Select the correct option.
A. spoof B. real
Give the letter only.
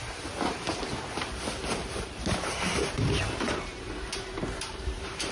A